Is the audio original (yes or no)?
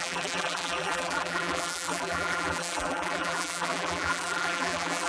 no